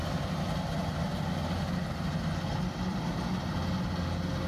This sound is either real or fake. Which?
real